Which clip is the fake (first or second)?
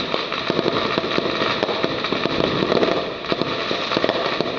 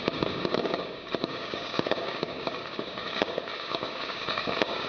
second